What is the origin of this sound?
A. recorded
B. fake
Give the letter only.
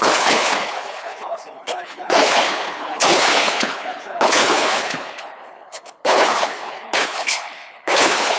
B